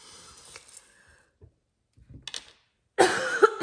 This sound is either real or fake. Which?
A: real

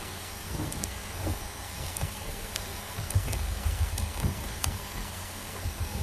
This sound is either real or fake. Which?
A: fake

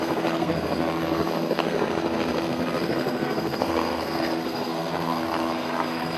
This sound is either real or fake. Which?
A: fake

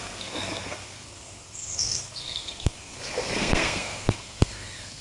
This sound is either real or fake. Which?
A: fake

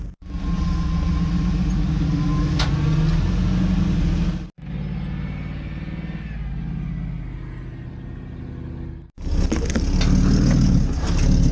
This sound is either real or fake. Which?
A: real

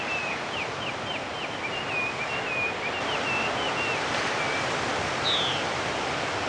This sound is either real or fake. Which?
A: real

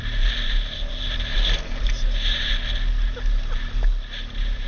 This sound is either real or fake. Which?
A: real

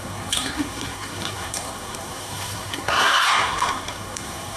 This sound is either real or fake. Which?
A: fake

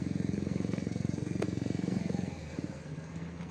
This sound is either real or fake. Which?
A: fake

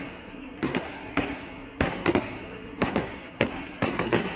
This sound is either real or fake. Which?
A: fake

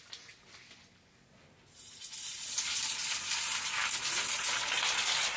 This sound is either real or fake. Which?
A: real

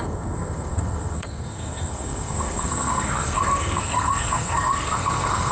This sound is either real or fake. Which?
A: fake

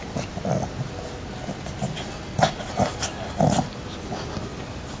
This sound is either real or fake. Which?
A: real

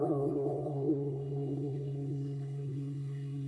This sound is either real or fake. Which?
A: fake